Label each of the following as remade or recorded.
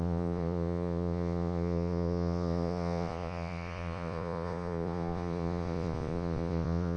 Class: remade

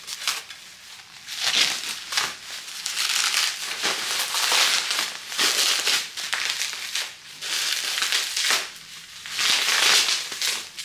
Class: recorded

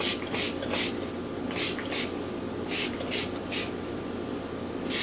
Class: recorded